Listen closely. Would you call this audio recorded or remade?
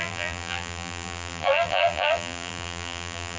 remade